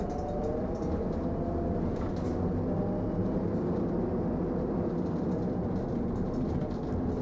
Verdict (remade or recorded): recorded